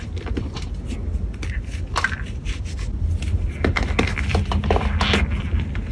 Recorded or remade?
recorded